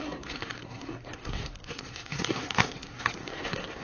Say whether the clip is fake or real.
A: fake